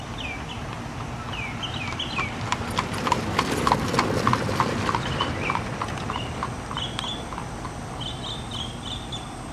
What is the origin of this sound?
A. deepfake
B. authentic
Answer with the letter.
B